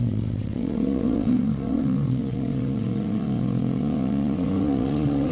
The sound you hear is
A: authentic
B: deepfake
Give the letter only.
B